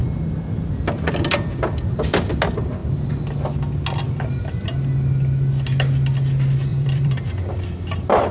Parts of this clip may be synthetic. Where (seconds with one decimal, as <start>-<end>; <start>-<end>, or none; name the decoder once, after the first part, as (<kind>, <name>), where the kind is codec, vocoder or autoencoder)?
6.7-7.8 (vocoder, BigVGAN v2)